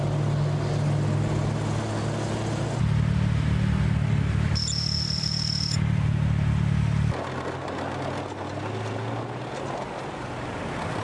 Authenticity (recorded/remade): recorded